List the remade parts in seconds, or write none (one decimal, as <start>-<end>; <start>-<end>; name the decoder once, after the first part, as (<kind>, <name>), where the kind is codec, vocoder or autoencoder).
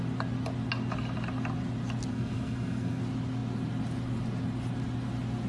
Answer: 2.1-3.0 (codec, SNAC)